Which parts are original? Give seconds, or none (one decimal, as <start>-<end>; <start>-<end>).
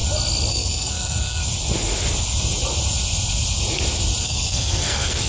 0.0-0.5; 1.4-4.2